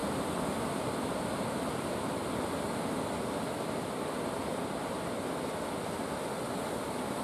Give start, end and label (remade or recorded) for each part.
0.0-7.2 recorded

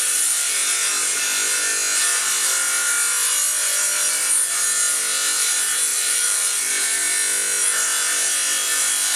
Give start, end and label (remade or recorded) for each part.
0.0-5.9 recorded; 5.9-6.7 remade; 6.7-9.2 recorded

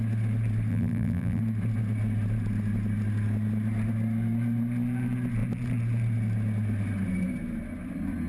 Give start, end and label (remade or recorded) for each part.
0.0-0.7 recorded; 0.7-1.4 remade; 1.4-8.3 recorded

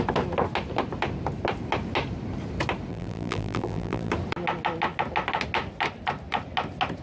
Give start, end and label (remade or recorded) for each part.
0.0-2.9 recorded; 2.9-4.1 remade; 4.1-7.0 recorded